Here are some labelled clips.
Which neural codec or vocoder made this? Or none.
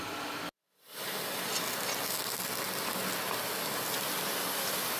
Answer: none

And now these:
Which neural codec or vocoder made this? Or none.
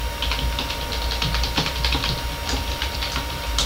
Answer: none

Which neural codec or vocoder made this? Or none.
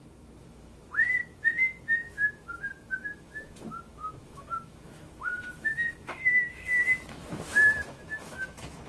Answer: autoencoder, DAC-VAE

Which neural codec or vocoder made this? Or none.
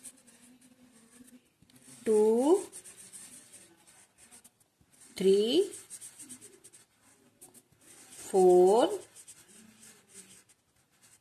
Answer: none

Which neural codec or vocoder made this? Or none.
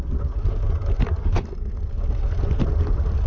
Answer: none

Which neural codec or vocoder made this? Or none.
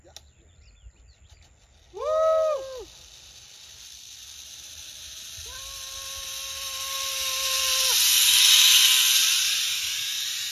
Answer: none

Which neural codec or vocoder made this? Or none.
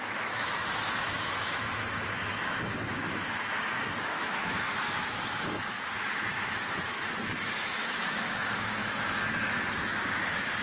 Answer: autoencoder, DAC-VAE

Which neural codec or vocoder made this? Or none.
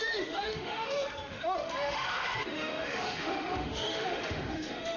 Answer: autoencoder, DAC-VAE